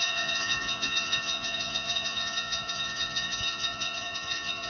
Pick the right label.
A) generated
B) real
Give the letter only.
A